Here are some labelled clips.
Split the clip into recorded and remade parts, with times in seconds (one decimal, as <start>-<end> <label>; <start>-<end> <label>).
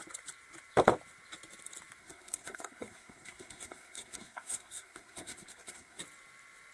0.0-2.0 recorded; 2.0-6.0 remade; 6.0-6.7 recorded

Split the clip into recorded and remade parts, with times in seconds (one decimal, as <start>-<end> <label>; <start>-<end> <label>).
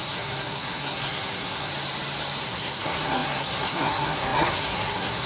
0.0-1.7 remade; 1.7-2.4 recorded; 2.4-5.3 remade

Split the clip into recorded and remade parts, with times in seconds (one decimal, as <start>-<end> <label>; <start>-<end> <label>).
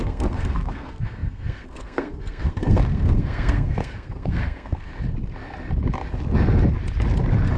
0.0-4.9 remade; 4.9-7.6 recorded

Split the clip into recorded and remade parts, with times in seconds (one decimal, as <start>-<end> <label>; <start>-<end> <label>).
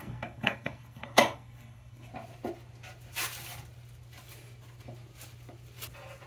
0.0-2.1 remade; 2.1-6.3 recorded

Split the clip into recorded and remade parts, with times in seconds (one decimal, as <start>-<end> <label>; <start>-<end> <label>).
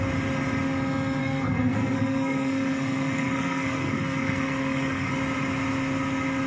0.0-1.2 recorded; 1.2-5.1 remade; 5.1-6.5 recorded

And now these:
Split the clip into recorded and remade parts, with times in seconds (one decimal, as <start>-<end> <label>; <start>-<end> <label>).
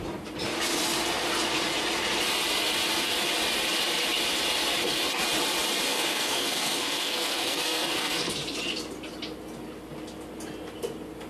0.0-5.9 recorded; 5.9-8.3 remade; 8.3-11.3 recorded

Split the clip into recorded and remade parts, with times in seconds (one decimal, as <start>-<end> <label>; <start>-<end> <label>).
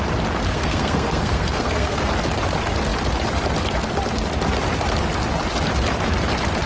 0.0-0.5 recorded; 0.5-2.1 remade; 2.1-6.7 recorded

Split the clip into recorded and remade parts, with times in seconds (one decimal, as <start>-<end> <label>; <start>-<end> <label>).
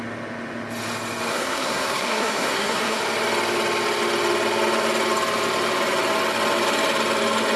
0.0-1.3 recorded; 1.3-3.0 remade; 3.0-7.6 recorded